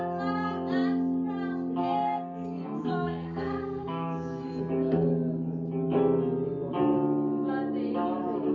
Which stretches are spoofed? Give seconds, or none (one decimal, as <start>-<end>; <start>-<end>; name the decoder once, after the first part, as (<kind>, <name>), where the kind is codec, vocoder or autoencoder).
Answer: 1.8-4.6 (codec, SNAC)